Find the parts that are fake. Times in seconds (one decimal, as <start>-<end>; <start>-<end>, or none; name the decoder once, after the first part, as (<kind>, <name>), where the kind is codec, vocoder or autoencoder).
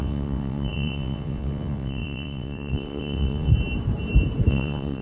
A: 0.0-3.5 (vocoder, WaveNeXt); 4.5-5.0